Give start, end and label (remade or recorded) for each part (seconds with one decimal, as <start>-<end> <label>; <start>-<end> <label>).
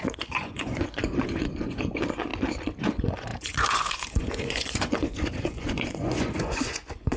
0.0-2.3 remade; 2.3-2.8 recorded; 2.8-7.2 remade